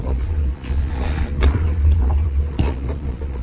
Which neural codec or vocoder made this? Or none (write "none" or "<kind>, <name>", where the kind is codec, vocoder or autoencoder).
vocoder, Vocos